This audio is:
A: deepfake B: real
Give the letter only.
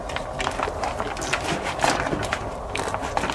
B